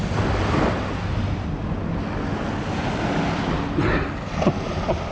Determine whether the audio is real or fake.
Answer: real